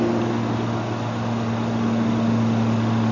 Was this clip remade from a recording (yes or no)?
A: no